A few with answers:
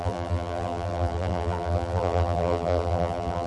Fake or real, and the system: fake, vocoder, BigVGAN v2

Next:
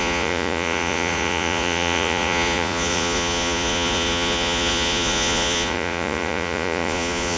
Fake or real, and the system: fake, vocoder, Vocos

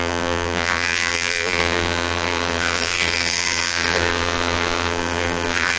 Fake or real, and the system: fake, vocoder, BigVGAN v2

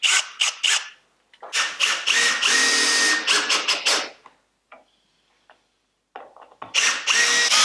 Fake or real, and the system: real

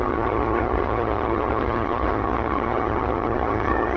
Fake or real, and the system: fake, vocoder, HiFi-GAN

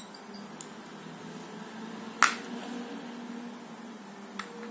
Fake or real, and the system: real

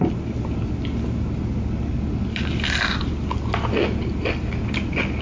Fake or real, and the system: real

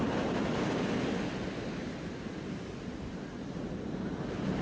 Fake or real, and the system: real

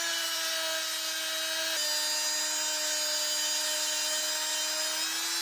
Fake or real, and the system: real